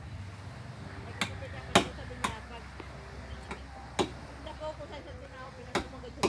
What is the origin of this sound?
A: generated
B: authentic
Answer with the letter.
B